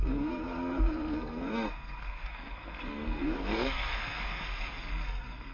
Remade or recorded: remade